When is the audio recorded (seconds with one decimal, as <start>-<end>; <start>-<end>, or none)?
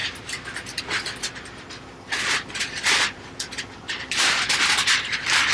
0.0-5.5